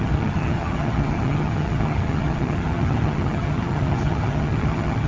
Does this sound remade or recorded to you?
remade